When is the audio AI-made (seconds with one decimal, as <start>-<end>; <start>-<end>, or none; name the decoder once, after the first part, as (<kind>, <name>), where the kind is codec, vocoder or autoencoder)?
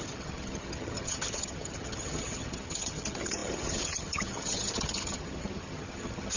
0.0-6.4 (vocoder, HiFi-GAN)